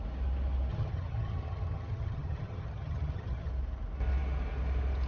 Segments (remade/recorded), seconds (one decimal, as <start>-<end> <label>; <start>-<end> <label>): 0.0-0.7 recorded; 0.7-3.5 remade; 3.5-5.1 recorded

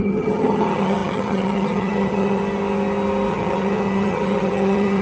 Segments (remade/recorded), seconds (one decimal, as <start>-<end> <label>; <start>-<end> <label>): 0.0-2.4 remade; 2.4-3.3 recorded; 3.3-5.0 remade

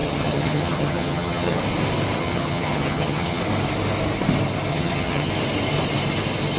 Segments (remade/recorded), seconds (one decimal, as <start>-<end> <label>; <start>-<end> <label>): 0.0-1.6 remade; 1.6-2.2 recorded; 2.2-3.4 remade; 3.4-4.7 recorded; 4.7-5.3 remade; 5.3-6.6 recorded